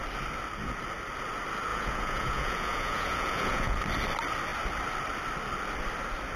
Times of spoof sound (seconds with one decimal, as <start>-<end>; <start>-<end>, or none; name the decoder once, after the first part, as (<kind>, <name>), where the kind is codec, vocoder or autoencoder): 1.7-3.8 (vocoder, Vocos)